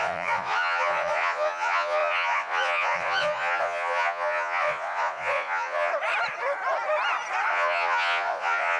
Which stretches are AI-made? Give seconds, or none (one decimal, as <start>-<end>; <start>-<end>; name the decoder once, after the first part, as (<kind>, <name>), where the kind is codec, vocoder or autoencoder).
0.0-5.9 (vocoder, Vocos); 7.5-8.8